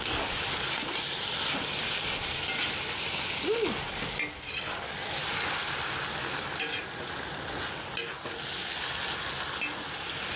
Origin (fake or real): real